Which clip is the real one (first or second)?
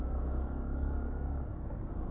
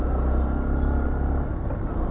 second